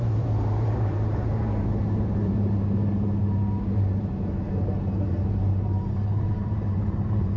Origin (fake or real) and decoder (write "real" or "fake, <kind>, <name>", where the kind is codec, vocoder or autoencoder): fake, vocoder, BigVGAN v2